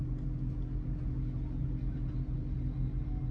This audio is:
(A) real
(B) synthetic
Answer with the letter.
A